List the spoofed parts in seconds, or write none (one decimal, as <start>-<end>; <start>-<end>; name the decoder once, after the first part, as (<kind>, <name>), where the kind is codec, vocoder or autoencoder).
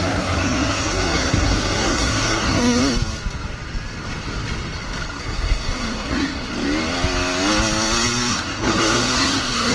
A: 0.0-2.8 (codec, SNAC); 5.2-6.5; 8.3-9.7